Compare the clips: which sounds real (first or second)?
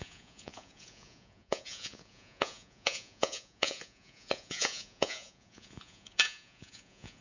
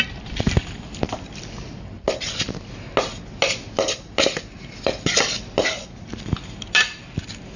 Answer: second